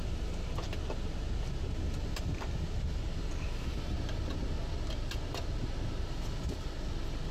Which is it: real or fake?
real